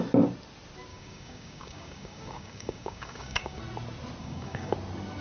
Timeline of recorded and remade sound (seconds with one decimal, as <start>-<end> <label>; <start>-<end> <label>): 0.0-0.9 recorded; 0.9-3.6 remade; 3.6-4.2 recorded; 4.2-4.7 remade; 4.7-5.2 recorded